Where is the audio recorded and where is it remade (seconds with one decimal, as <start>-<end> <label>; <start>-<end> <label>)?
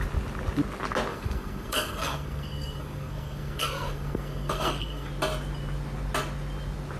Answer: 0.0-1.1 recorded; 1.1-5.1 remade; 5.1-7.0 recorded